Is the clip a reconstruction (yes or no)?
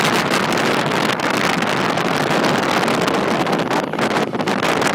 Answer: no